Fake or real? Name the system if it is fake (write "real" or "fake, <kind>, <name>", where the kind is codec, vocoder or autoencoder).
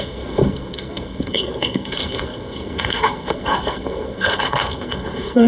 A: fake, codec, SNAC